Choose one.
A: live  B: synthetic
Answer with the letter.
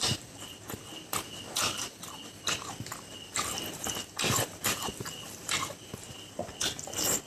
B